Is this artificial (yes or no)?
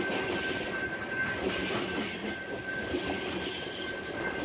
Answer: no